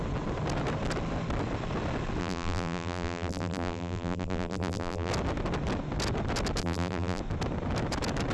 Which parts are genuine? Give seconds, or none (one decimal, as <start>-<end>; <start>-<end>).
0.0-2.2; 5.1-6.6; 7.2-8.3